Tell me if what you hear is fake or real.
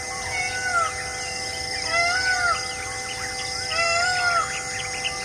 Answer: real